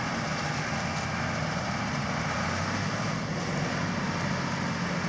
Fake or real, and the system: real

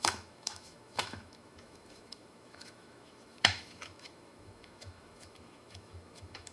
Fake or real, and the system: fake, autoencoder, DAC-VAE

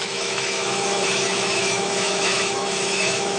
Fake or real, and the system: fake, autoencoder, DAC-VAE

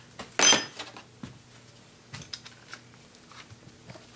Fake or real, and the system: real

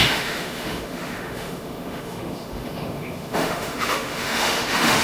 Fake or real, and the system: fake, autoencoder, DAC-VAE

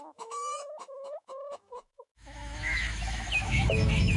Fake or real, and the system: fake, autoencoder, DAC-VAE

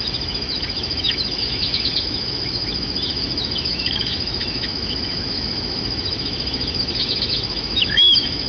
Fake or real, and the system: fake, autoencoder, DAC-VAE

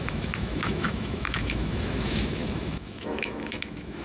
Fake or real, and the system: fake, autoencoder, DAC-VAE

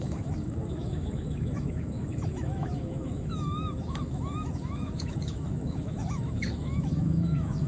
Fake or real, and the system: fake, autoencoder, DAC-VAE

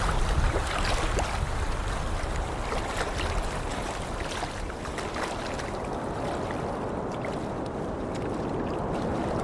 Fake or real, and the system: real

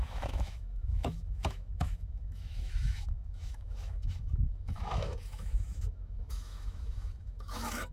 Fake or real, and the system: fake, autoencoder, DAC-VAE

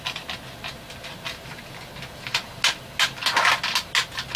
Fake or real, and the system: real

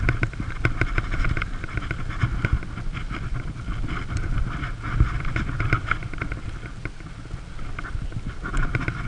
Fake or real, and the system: real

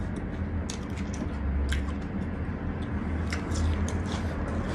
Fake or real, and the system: real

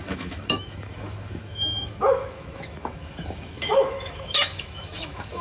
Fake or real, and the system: fake, autoencoder, DAC-VAE